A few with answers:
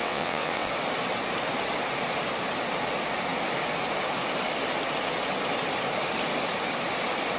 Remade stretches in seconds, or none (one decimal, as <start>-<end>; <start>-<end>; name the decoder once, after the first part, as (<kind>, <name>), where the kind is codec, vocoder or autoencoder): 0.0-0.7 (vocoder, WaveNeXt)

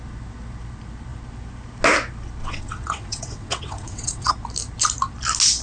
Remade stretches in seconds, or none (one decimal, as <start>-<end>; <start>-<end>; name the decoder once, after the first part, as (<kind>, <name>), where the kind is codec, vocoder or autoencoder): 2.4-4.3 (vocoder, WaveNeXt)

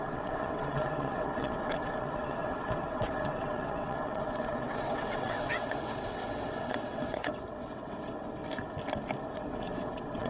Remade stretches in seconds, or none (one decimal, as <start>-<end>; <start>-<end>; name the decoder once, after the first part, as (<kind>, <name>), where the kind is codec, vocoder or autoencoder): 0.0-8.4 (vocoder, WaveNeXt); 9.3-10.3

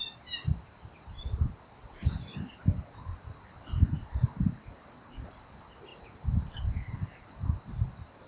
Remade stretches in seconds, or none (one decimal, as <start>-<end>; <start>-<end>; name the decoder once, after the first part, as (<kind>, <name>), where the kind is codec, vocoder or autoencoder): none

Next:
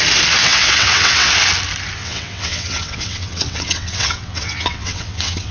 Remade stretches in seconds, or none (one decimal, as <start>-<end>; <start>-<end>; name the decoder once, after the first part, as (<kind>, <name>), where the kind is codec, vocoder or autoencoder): 0.4-1.3 (vocoder, WaveNeXt); 2.0-5.5

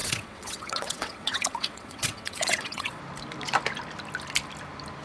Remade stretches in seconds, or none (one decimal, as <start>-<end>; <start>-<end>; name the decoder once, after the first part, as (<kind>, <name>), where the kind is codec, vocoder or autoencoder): 0.0-3.0 (vocoder, WaveNeXt)

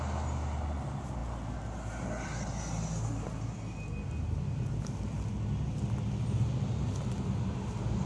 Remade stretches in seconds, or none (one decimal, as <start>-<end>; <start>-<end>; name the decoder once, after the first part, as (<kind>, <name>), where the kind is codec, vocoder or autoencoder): none

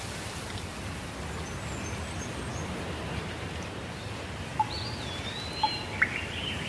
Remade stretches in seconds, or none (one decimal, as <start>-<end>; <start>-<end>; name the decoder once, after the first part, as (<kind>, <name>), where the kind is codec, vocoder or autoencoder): none